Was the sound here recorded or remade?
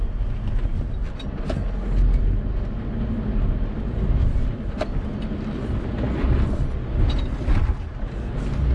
recorded